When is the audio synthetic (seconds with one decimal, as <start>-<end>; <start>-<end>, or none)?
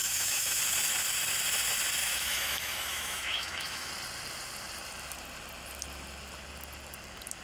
0.0-0.6; 2.0-3.9